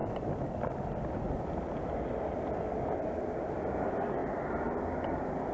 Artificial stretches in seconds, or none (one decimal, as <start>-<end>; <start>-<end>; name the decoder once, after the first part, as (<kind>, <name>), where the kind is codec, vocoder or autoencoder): none